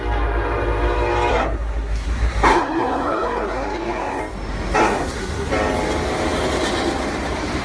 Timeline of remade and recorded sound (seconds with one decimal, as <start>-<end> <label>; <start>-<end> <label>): 0.0-1.3 recorded; 1.3-4.2 remade; 4.2-4.8 recorded; 4.8-5.5 remade; 5.5-7.6 recorded